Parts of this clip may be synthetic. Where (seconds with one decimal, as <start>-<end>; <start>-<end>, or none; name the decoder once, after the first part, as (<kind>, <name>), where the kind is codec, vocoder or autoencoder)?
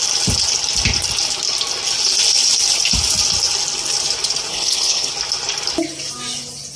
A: 4.5-5.1 (codec, HILCodec)